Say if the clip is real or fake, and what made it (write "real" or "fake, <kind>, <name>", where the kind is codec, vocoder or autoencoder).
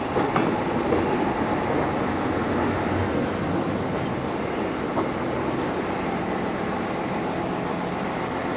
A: real